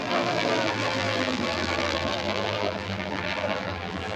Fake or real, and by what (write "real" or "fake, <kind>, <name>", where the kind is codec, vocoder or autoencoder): fake, vocoder, BigVGAN v2